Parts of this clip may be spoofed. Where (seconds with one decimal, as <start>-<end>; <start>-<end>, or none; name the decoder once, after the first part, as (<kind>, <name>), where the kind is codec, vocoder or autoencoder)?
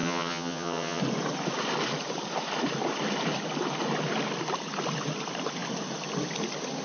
0.0-1.0 (vocoder, HiFi-GAN)